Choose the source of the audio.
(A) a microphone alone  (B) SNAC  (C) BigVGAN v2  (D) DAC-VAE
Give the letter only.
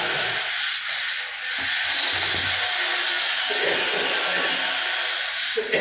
A